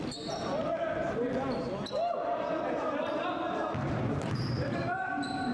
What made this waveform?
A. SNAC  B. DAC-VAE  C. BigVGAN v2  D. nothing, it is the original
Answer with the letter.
D